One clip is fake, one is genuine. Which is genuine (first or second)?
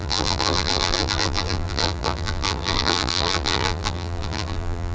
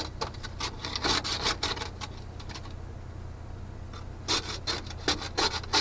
second